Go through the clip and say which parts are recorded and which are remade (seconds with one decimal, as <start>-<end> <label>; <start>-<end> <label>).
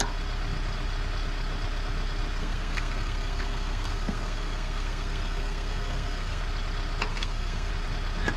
0.0-2.4 recorded; 2.4-6.4 remade; 6.4-7.1 recorded; 7.1-7.7 remade; 7.7-8.4 recorded